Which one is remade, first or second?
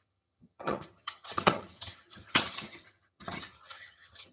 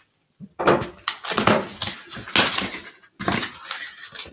first